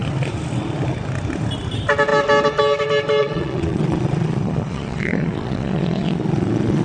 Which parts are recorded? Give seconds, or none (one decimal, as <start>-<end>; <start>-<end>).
0.0-3.2